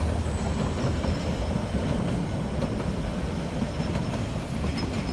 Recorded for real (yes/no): yes